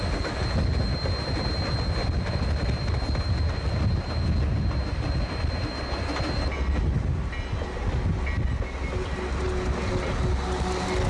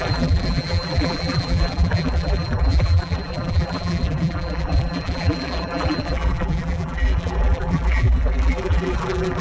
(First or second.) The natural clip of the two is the first